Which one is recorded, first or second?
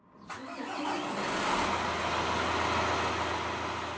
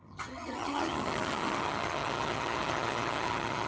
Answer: first